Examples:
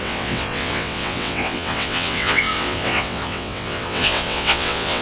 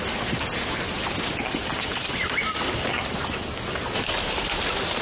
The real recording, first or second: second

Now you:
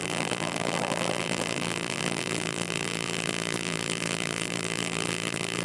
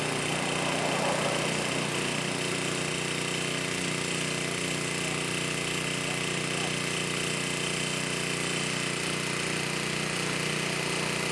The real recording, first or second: second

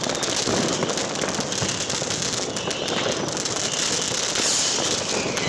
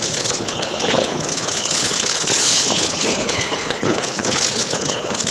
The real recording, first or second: first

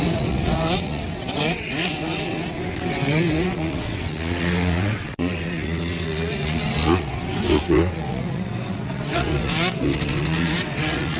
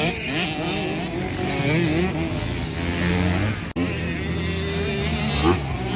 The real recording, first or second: second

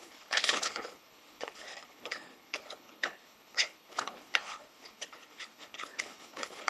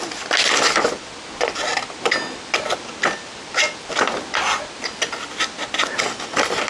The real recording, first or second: second